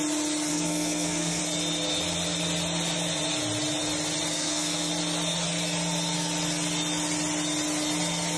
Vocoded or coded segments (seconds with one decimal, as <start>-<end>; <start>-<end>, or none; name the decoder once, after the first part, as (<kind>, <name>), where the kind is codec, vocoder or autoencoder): 0.5-1.4 (codec, SNAC); 4.3-4.9